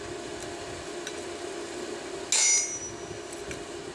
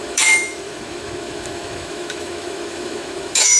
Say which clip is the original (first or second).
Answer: first